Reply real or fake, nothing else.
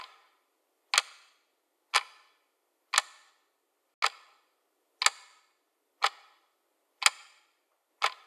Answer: real